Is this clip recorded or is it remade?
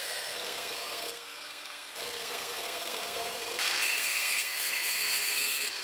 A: remade